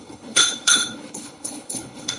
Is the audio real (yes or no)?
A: no